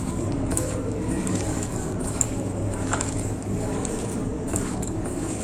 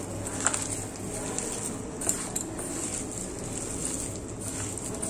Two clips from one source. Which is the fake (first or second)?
first